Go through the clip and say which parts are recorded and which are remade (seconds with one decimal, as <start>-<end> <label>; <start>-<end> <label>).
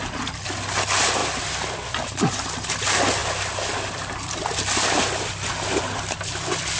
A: 0.0-6.8 recorded